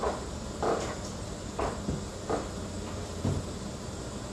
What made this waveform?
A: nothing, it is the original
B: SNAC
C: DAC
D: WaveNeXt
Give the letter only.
A